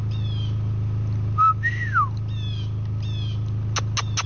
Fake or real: real